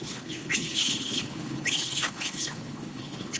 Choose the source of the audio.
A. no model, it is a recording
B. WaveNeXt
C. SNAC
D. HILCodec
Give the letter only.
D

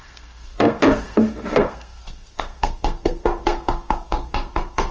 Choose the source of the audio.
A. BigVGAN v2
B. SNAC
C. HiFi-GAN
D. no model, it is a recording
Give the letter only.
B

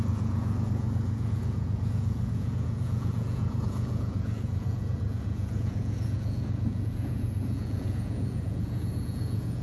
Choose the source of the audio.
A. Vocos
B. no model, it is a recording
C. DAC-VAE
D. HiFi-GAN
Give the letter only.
A